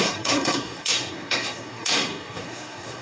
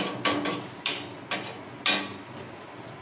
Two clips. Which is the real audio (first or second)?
second